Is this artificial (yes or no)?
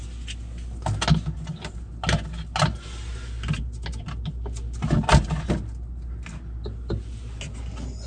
no